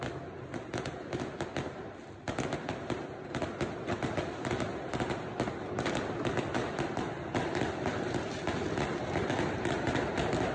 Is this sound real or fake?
real